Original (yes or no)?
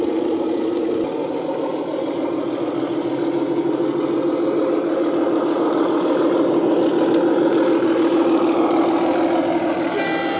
yes